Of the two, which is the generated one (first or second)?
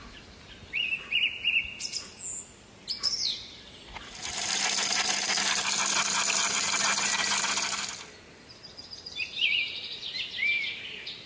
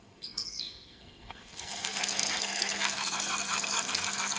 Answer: second